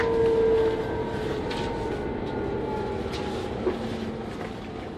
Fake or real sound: real